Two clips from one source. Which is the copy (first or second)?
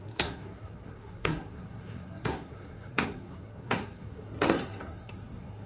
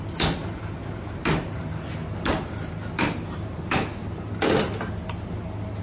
first